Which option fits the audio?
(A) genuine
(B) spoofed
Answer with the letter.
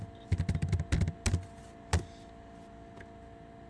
A